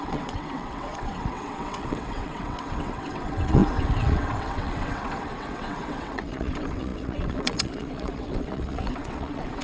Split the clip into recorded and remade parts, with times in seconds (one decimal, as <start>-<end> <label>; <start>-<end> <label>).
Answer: 0.0-9.6 remade